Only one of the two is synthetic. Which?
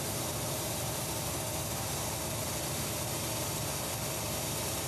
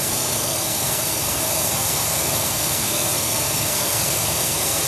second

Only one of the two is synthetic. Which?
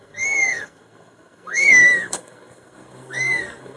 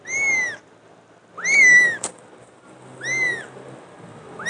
first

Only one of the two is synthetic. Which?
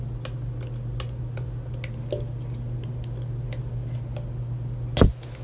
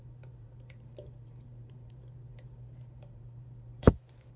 second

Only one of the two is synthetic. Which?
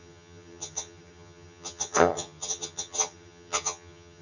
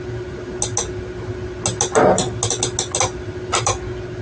first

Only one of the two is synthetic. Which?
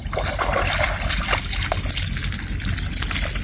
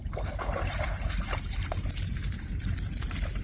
second